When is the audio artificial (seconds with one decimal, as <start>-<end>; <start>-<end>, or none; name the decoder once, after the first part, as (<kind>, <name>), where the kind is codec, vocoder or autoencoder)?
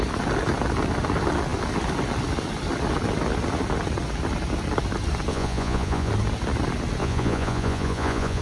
5.3-6.1 (vocoder, Vocos); 7.0-8.4